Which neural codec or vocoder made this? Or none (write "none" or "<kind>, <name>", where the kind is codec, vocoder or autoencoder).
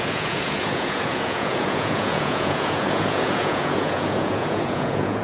vocoder, Vocos